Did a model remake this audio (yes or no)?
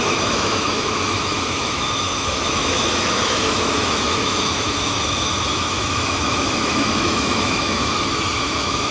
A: yes